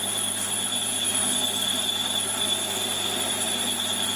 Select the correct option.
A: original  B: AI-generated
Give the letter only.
A